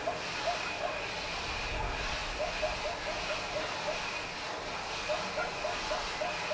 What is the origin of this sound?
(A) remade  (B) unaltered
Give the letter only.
B